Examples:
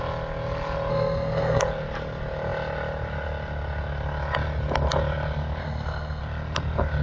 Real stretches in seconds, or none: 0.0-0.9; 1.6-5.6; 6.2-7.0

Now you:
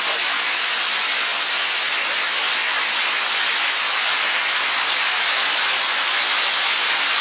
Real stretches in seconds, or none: 0.0-7.2

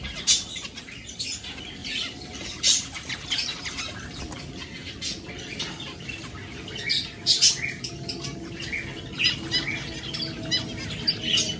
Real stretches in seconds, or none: 0.0-1.8; 3.8-11.6

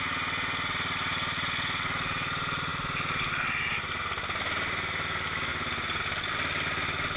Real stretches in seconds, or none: 0.0-7.2